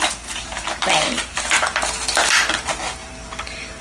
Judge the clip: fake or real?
real